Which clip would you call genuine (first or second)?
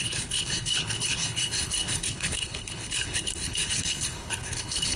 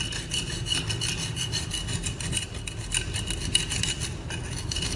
second